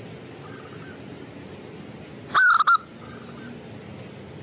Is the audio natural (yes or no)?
yes